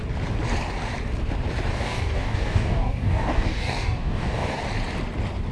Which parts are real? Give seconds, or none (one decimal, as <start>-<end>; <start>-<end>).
0.0-1.7; 4.6-5.5